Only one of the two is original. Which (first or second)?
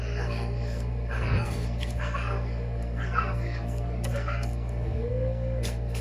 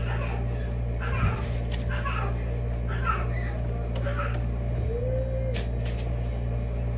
second